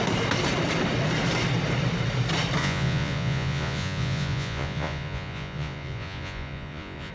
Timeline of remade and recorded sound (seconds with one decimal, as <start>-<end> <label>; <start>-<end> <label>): 0.0-2.6 recorded; 2.6-7.1 remade